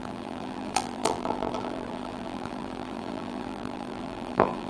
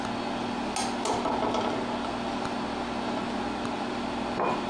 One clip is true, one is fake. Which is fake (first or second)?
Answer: first